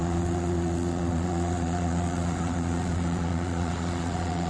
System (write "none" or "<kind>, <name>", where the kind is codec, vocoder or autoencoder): vocoder, Vocos